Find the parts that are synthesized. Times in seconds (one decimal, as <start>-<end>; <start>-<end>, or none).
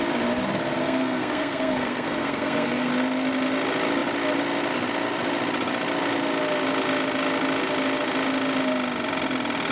0.8-2.9